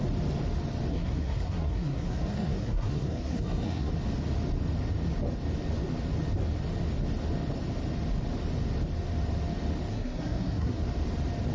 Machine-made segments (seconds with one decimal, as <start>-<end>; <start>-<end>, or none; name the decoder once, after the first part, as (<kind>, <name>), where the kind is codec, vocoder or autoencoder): 0.9-3.9 (codec, SNAC); 9.9-10.8